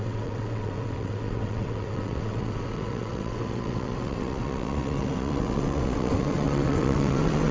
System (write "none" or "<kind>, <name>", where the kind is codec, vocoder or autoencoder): vocoder, WaveNeXt